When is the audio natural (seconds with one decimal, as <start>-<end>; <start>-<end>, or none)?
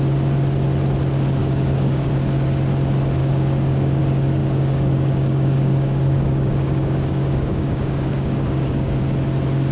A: 0.0-1.4; 2.1-3.2; 4.0-4.4; 9.0-9.7